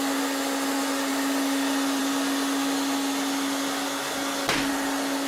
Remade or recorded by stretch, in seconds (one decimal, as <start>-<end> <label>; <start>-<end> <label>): 0.0-5.3 recorded